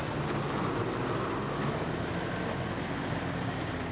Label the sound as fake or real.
real